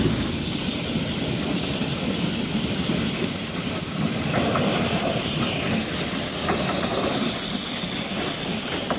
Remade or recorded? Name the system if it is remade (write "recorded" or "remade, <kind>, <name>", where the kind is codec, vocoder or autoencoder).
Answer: recorded